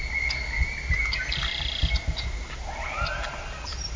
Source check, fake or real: real